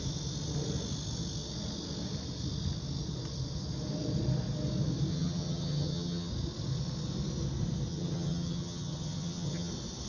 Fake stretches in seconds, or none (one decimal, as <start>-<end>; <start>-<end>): 5.1-6.3; 7.9-9.7